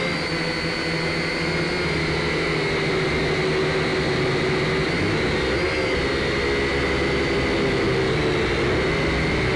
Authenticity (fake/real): real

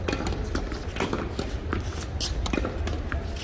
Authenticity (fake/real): real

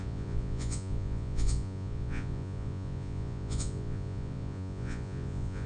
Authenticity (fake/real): fake